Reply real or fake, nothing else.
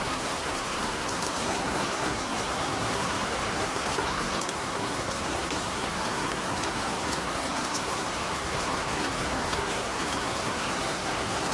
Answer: fake